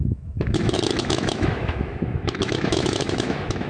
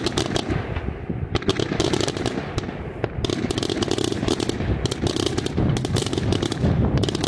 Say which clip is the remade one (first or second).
first